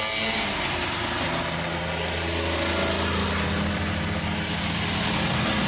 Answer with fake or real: real